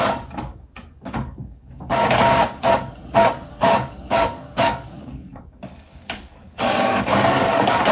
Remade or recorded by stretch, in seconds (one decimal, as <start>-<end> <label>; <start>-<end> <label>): 0.0-2.4 remade; 2.4-3.5 recorded; 3.5-7.9 remade